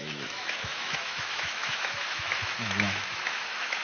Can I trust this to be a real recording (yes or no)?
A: no